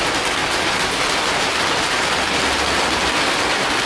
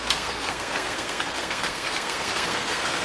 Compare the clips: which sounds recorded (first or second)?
first